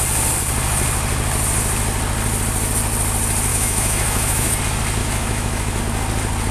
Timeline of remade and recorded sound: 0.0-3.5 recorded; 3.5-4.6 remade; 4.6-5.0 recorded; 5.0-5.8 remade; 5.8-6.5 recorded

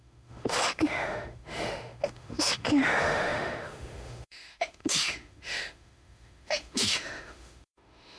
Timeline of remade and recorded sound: 0.0-8.2 remade

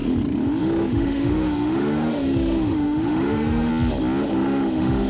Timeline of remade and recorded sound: 0.0-0.6 recorded; 0.6-3.7 remade; 3.7-4.2 recorded; 4.2-5.1 remade

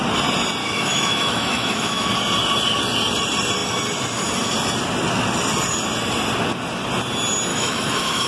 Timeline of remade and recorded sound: 0.0-0.6 recorded; 0.6-2.1 remade; 2.1-7.5 recorded; 7.5-8.3 remade

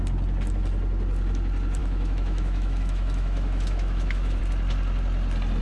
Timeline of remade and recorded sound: 0.0-1.8 recorded; 1.8-4.4 remade; 4.4-5.6 recorded

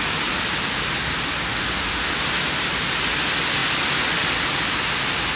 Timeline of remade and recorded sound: 0.0-1.5 recorded; 1.5-2.1 remade; 2.1-5.4 recorded